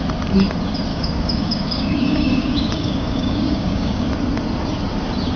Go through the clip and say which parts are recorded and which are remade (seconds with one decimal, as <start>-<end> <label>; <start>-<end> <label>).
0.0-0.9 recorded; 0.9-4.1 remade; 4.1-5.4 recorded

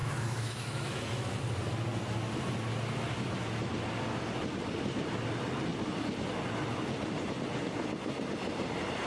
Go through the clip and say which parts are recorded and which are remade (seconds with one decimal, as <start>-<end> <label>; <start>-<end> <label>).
0.0-1.4 remade; 1.4-9.1 recorded

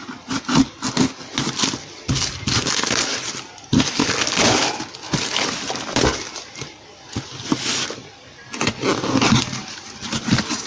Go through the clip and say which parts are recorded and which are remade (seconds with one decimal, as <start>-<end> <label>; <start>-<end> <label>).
0.0-10.7 recorded